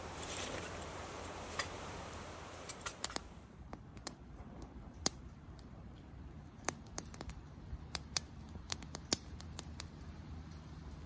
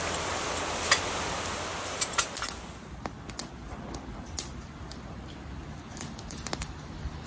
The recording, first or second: second